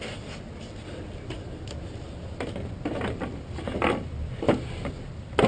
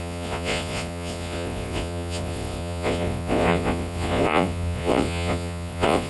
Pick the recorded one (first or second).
first